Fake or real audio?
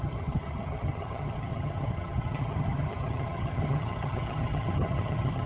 fake